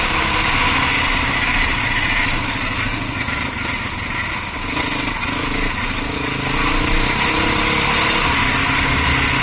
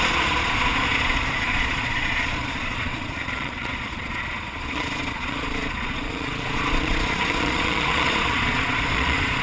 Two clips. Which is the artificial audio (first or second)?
second